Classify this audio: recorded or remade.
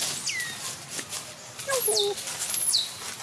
recorded